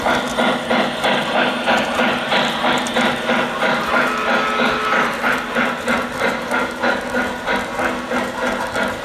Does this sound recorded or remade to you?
recorded